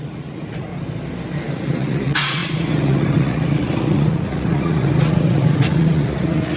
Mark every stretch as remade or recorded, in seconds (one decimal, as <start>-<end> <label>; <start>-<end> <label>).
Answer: 0.0-0.7 remade; 0.7-1.5 recorded; 1.5-6.6 remade